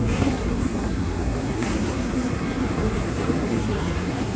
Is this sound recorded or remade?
remade